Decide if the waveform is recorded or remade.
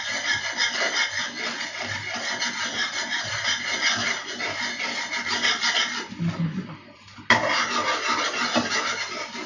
recorded